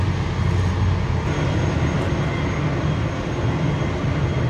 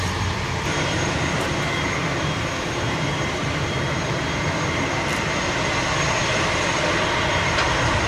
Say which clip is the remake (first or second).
second